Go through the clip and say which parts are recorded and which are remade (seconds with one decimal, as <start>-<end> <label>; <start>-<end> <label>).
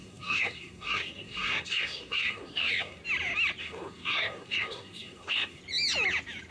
0.0-3.0 remade; 3.0-3.6 recorded; 3.6-5.6 remade; 5.6-6.5 recorded